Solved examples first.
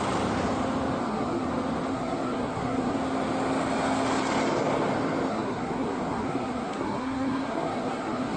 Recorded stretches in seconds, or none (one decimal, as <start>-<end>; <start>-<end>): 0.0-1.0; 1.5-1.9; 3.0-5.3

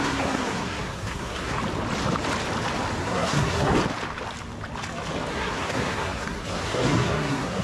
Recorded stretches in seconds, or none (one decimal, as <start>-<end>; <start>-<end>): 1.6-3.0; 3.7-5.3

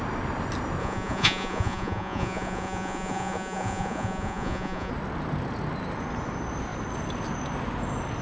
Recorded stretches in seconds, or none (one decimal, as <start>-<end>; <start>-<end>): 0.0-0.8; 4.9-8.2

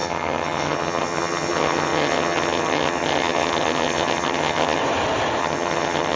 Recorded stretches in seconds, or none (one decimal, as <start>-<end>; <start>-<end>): 4.8-5.4